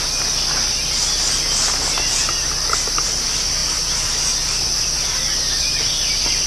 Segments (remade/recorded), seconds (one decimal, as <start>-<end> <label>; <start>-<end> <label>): 0.0-6.5 recorded